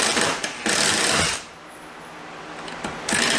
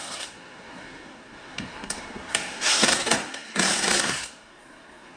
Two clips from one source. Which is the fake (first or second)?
second